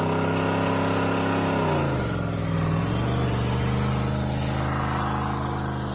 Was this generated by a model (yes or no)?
no